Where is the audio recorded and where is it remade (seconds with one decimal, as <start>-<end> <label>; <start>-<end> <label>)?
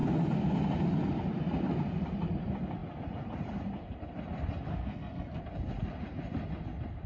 0.0-4.7 recorded; 4.7-5.4 remade; 5.4-7.1 recorded